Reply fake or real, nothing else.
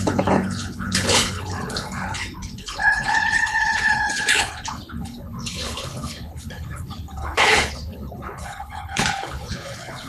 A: fake